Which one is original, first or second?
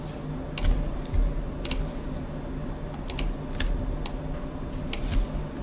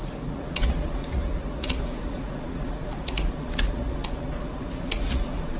first